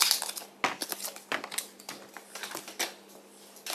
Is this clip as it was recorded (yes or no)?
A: yes